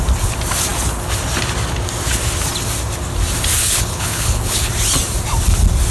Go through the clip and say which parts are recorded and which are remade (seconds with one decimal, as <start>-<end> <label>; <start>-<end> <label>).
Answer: 0.0-3.6 recorded; 3.6-4.7 remade; 4.7-5.9 recorded